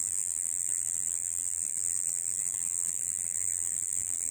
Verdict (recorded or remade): remade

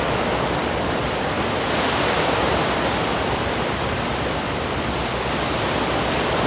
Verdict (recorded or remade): remade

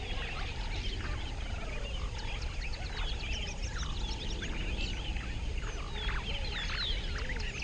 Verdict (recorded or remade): recorded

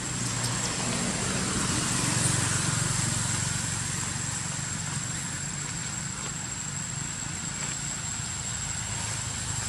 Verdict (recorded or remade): recorded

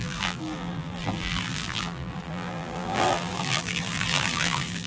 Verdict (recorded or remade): remade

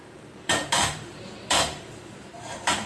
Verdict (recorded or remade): remade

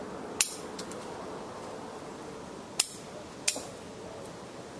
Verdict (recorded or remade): recorded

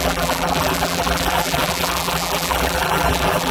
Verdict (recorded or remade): remade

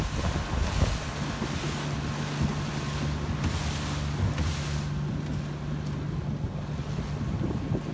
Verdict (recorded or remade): recorded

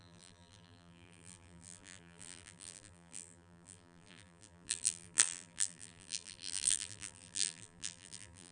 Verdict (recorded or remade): remade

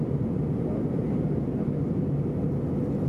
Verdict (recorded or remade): recorded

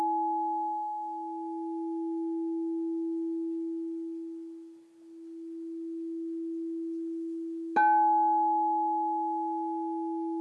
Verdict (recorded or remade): recorded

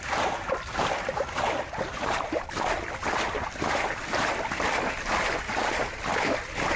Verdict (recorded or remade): remade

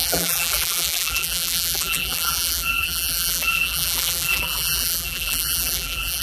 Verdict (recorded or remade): remade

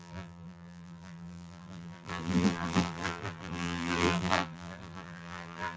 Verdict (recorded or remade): remade